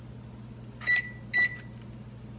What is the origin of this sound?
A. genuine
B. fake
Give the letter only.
A